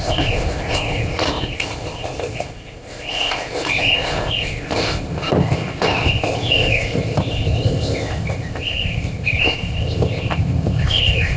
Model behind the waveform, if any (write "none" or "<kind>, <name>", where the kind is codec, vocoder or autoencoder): codec, ZipCodec